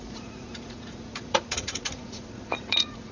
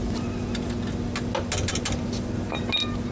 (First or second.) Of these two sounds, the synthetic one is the first